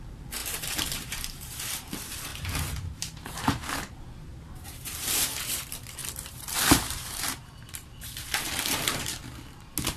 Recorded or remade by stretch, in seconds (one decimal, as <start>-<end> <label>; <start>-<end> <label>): 0.0-9.2 remade; 9.2-10.0 recorded